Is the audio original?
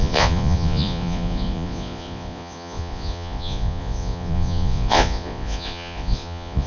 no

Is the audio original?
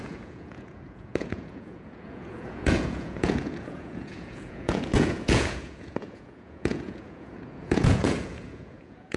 no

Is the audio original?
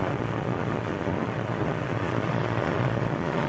no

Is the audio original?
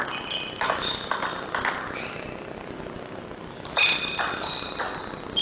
yes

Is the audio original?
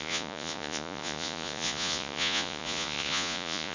no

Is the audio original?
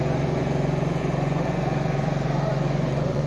no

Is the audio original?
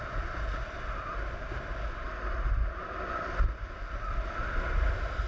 yes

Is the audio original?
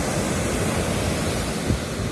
yes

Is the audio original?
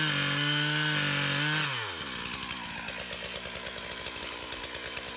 yes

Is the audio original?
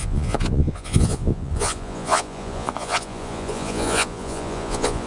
no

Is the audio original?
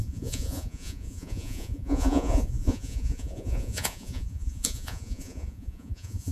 no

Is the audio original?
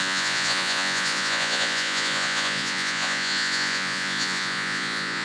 no